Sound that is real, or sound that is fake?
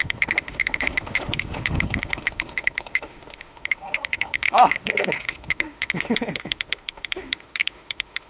fake